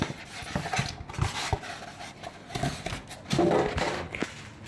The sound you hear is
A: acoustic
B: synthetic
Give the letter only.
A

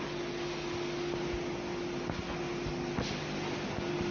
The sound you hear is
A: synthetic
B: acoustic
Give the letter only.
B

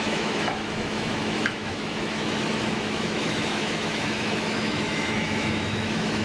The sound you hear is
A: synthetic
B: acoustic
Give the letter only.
A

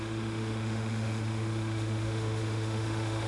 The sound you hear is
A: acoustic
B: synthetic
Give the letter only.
B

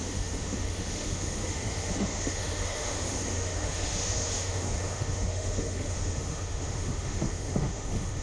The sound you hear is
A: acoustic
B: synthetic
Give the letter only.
B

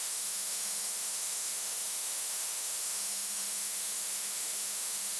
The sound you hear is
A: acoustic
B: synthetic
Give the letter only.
B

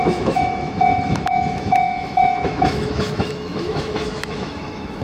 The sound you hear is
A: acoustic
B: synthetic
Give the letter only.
B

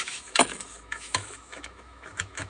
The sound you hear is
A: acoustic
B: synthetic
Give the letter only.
B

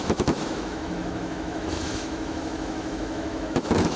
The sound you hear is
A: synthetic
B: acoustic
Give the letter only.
A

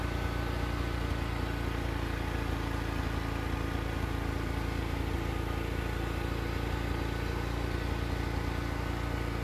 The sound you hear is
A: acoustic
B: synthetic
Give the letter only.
A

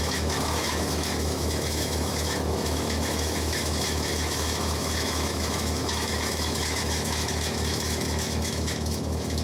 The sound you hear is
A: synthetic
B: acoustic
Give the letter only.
A